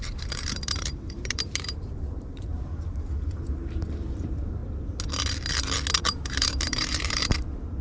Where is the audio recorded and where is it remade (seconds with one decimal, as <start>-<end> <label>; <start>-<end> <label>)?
0.0-4.6 remade; 4.6-6.0 recorded; 6.0-7.8 remade